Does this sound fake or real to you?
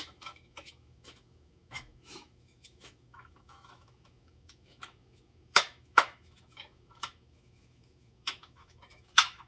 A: fake